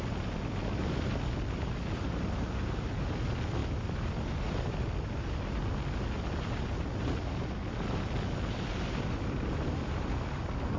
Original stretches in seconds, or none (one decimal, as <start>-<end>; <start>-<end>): 0.0-10.8